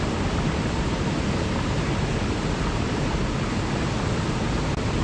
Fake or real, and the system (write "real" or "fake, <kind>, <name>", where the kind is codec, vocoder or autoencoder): real